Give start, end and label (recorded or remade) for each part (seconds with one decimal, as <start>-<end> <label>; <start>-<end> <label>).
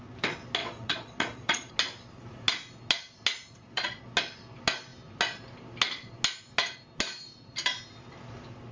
0.0-0.6 recorded; 0.6-1.7 remade; 1.7-3.5 recorded; 3.5-4.1 remade; 4.1-8.7 recorded